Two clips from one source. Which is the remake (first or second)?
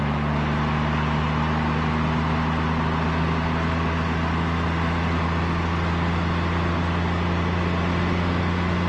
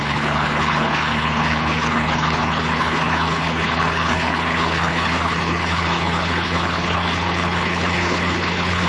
second